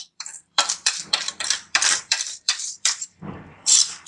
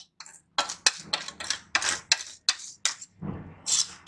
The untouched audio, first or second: second